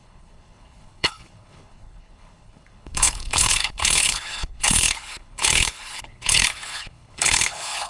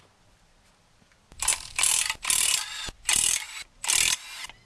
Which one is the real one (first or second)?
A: second